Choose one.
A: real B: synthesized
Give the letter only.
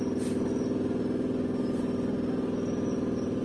A